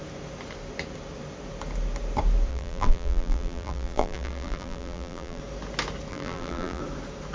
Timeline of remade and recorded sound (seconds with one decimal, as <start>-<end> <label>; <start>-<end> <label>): 0.0-2.5 recorded; 2.5-5.4 remade; 5.4-6.1 recorded; 6.1-6.8 remade; 6.8-7.3 recorded